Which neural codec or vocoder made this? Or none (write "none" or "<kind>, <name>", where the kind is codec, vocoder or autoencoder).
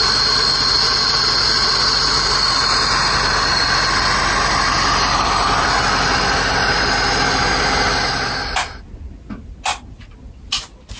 none